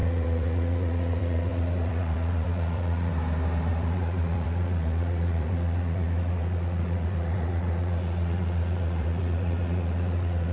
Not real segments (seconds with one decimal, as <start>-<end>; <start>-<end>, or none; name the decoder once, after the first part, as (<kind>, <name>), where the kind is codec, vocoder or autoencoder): 0.0-3.1 (vocoder, Vocos); 3.7-10.5